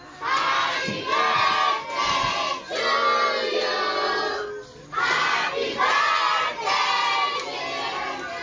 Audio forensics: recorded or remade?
recorded